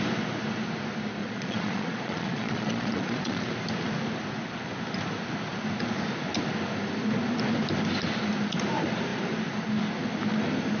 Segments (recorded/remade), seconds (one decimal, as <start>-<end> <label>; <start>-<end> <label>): 0.0-1.2 recorded; 1.2-3.5 remade; 3.5-10.8 recorded